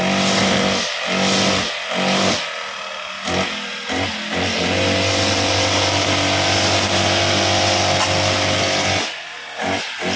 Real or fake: real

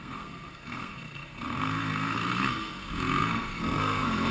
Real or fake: fake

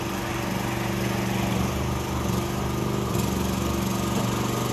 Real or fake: real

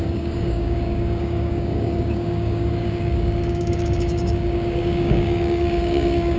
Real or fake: fake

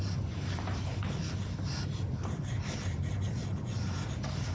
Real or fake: real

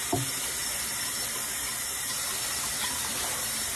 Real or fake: fake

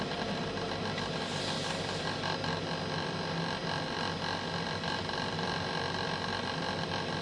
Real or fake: real